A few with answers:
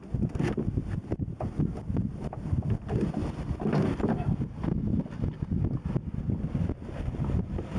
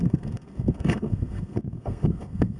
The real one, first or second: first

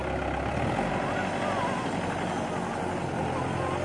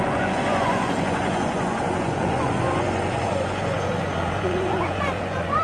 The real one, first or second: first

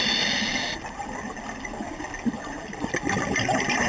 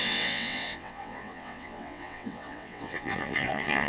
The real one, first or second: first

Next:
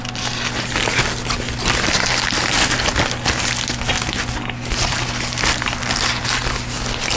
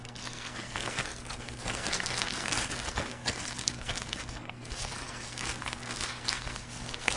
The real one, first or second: first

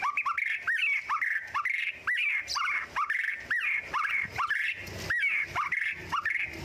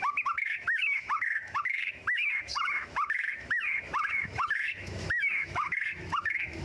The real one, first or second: first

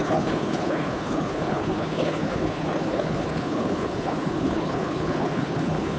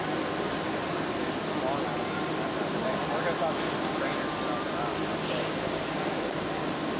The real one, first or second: second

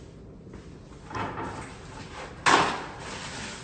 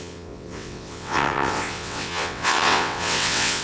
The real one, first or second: first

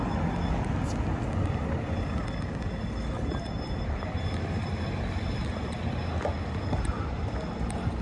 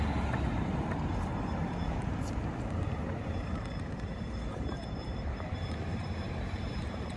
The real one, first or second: first